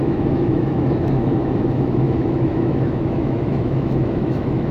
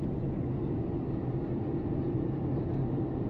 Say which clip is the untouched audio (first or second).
second